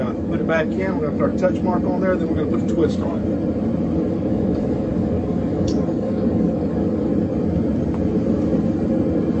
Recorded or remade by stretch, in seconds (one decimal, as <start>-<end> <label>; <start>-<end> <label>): 0.0-1.3 remade; 1.3-2.5 recorded; 2.5-3.2 remade; 3.2-4.1 recorded; 4.1-7.1 remade; 7.1-9.4 recorded